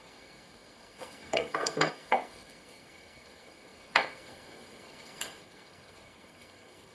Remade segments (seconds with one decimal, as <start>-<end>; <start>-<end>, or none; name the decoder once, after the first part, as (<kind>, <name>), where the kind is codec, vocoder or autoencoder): 0.0-6.9 (codec, SNAC)